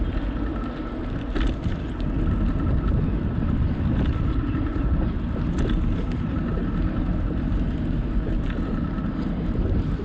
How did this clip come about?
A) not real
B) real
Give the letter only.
B